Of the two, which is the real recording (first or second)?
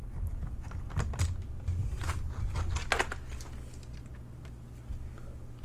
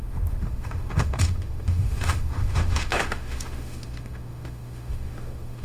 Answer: first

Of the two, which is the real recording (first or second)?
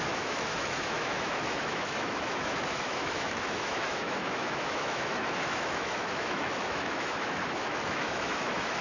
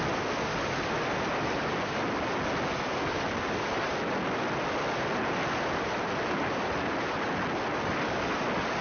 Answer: second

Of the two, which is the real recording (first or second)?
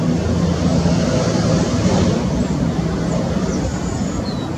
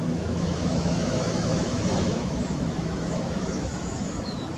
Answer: first